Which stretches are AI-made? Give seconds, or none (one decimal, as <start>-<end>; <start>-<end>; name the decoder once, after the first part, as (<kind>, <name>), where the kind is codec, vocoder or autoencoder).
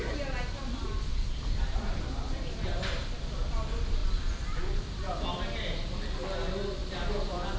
1.1-2.8 (vocoder, BigVGAN v2); 4.0-5.2; 6.8-7.6